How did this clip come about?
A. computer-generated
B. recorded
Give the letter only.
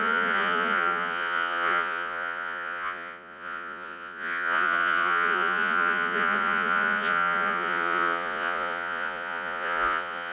A